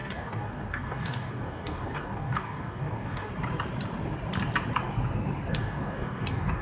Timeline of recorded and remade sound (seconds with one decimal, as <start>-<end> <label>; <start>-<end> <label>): 0.0-3.3 remade; 3.3-5.5 recorded; 5.5-6.6 remade